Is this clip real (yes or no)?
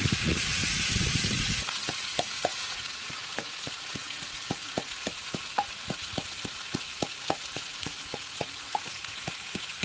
no